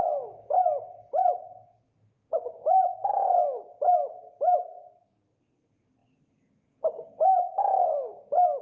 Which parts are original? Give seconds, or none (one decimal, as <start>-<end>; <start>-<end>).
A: 0.6-1.6